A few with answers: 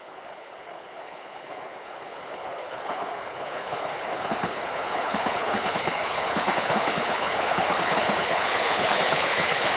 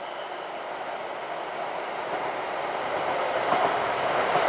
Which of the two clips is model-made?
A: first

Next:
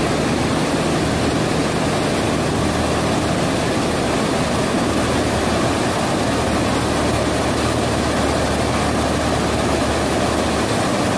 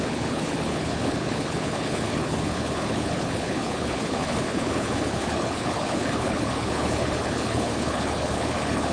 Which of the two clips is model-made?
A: second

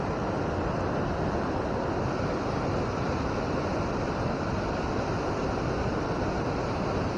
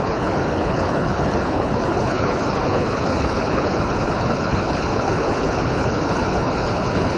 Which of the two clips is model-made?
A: second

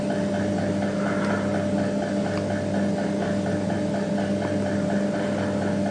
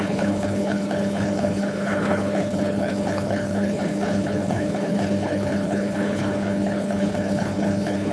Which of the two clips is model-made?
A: second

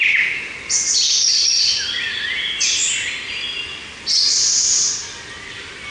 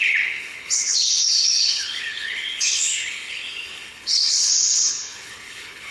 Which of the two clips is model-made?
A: second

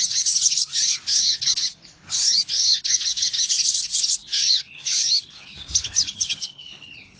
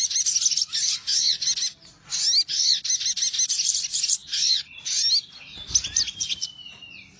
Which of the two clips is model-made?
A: first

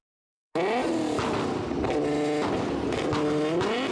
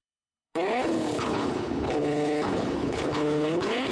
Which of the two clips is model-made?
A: second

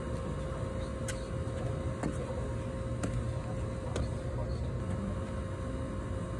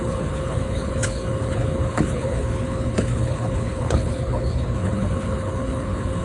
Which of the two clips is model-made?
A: second